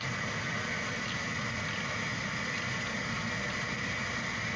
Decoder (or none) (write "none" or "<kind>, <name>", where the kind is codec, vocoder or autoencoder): none